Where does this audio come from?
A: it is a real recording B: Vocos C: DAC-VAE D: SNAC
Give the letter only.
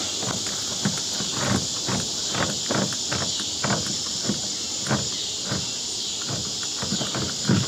A